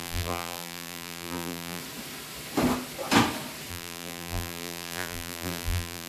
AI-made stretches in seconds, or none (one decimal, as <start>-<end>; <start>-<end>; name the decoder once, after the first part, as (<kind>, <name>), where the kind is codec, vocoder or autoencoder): 0.0-1.8 (vocoder, BigVGAN v2); 3.7-6.1

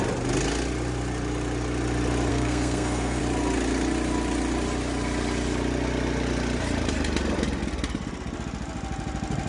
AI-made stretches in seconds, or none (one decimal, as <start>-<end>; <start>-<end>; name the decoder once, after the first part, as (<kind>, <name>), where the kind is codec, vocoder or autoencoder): 2.3-3.2 (codec, SNAC)

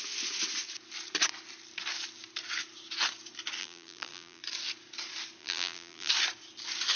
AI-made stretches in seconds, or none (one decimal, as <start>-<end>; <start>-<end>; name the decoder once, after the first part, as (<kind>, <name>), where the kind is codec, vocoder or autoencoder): 3.6-4.4 (vocoder, BigVGAN v2); 5.4-6.1

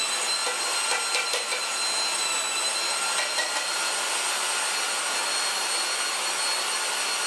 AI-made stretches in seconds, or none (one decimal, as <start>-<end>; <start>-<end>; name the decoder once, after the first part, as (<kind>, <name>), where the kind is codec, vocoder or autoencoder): none

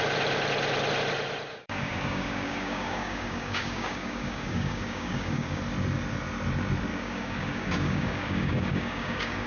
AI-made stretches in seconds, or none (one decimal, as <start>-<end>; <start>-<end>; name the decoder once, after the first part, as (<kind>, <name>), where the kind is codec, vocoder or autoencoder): 1.5-5.6 (codec, DAC); 6.9-9.5